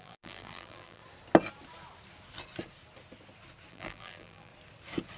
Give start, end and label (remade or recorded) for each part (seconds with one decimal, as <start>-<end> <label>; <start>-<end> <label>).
0.0-1.0 remade; 1.0-3.7 recorded; 3.7-4.5 remade; 4.5-5.2 recorded